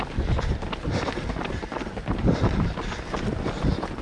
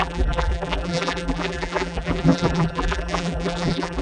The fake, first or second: second